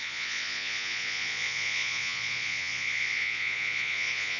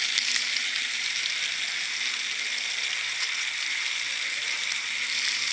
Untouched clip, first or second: second